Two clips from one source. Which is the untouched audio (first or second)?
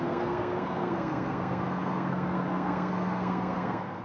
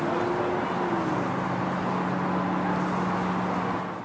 second